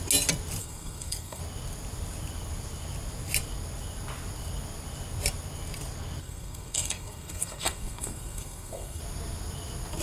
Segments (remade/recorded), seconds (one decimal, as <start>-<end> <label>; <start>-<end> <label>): 0.0-0.6 recorded; 0.6-1.4 remade; 1.4-6.2 recorded; 6.2-9.0 remade; 9.0-10.0 recorded